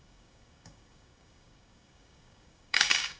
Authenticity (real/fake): fake